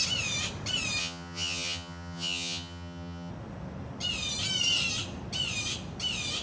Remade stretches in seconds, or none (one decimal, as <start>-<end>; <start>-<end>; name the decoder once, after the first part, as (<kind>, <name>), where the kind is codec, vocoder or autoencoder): 1.0-3.3 (vocoder, HiFi-GAN)